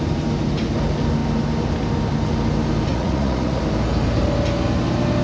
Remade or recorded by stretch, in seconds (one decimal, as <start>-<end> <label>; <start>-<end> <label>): 0.0-2.9 recorded; 2.9-3.6 remade; 3.6-5.2 recorded